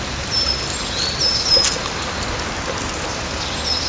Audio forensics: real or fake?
real